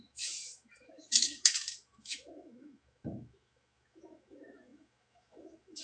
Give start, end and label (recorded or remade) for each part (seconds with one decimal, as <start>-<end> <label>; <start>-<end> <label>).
0.0-5.8 remade

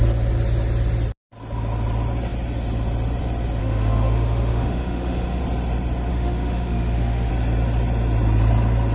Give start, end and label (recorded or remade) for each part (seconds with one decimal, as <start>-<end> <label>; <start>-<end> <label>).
0.0-3.6 recorded; 3.6-5.4 remade; 5.4-6.1 recorded; 6.1-7.3 remade; 7.3-8.9 recorded

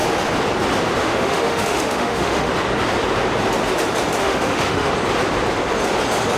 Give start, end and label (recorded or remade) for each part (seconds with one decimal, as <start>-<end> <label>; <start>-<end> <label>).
0.0-1.0 recorded; 1.0-2.5 remade; 2.5-4.2 recorded; 4.2-4.9 remade; 4.9-6.4 recorded

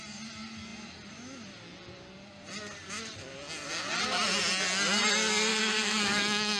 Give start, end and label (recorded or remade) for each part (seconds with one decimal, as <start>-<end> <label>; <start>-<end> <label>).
0.0-5.5 recorded; 5.5-6.6 remade

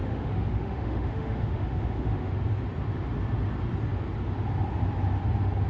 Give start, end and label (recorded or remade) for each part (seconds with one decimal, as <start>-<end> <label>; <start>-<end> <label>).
0.0-2.3 remade; 2.3-5.7 recorded

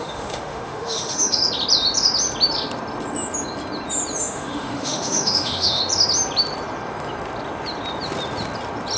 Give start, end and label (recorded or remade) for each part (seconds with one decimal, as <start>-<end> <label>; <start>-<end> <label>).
0.0-1.4 remade; 1.4-4.2 recorded; 4.2-5.8 remade; 5.8-9.0 recorded

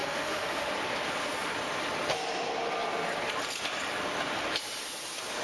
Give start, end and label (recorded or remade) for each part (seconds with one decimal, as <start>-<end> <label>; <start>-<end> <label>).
0.0-0.7 remade; 0.7-5.4 recorded